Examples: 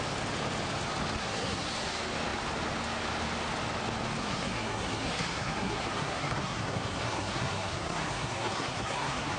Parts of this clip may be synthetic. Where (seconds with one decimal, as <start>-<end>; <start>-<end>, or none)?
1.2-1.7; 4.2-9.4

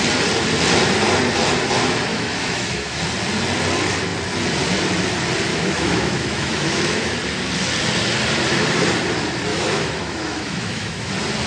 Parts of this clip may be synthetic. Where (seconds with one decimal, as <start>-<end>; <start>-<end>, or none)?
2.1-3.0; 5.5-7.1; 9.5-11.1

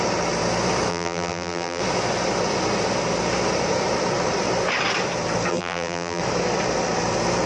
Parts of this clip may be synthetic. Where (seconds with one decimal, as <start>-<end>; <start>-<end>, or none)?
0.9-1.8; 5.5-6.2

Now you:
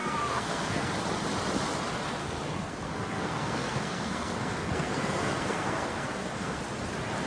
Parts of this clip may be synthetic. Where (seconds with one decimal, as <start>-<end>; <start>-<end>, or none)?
0.0-0.9; 2.2-6.6